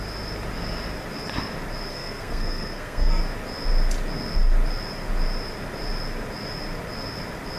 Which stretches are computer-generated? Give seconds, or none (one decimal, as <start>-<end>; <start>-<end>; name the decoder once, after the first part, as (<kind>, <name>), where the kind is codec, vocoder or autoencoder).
1.9-3.2 (codec, SNAC)